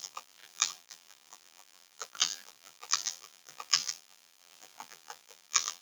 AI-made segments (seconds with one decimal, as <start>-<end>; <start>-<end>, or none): 0.0-5.8

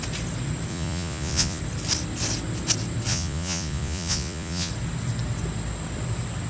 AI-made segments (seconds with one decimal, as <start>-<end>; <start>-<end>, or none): 0.7-1.6; 3.1-4.7

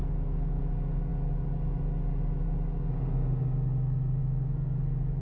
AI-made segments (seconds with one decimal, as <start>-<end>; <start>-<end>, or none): 0.0-0.6

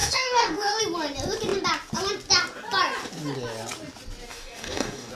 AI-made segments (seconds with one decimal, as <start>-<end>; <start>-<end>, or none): 0.0-0.8; 4.3-5.1

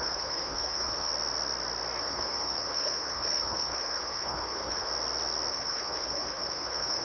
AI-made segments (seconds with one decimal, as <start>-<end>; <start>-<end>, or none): 0.0-1.1; 2.0-4.9; 5.5-7.0

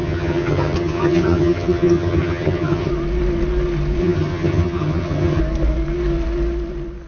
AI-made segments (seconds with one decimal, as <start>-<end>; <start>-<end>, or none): 0.0-2.9; 4.0-5.4